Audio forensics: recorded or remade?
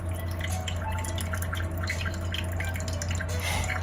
recorded